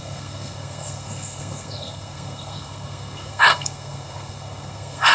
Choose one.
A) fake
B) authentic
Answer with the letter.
A